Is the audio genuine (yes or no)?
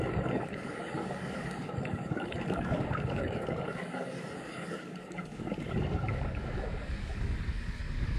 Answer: no